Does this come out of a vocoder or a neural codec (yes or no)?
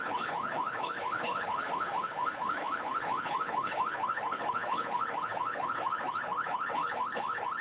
yes